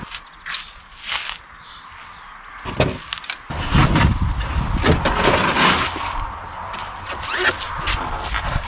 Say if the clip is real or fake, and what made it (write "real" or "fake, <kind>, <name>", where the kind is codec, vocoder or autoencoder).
real